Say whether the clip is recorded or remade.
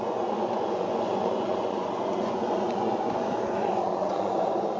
remade